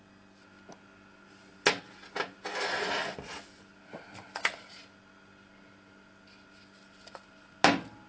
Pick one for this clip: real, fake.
real